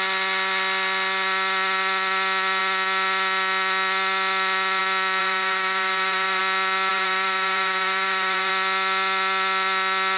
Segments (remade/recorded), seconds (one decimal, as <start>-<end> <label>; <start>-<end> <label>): 0.0-5.2 recorded; 5.2-6.4 remade; 6.4-6.9 recorded; 6.9-8.5 remade; 8.5-10.2 recorded